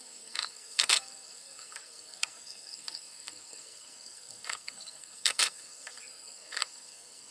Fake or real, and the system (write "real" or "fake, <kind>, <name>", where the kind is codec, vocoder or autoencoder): fake, codec, SNAC